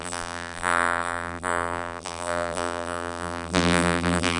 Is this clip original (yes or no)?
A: no